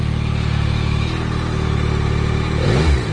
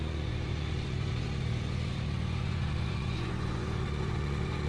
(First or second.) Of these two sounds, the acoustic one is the first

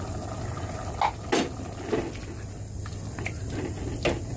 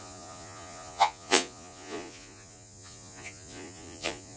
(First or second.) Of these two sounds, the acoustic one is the first